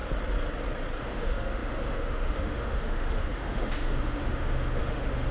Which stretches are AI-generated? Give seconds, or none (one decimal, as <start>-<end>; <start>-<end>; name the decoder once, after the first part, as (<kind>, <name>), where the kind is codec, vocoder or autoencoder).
1.0-5.3 (autoencoder, DAC-VAE)